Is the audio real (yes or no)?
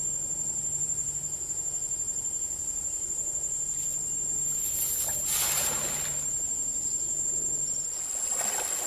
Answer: yes